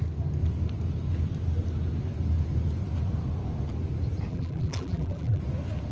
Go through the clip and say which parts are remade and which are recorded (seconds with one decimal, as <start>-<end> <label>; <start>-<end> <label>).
0.0-4.3 recorded; 4.3-5.4 remade; 5.4-5.9 recorded